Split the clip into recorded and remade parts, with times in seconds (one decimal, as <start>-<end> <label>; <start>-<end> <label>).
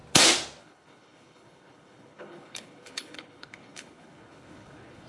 0.0-0.6 recorded; 0.6-5.1 remade